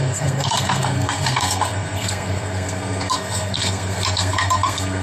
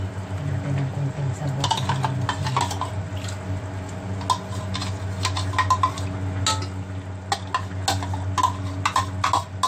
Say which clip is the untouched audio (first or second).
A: second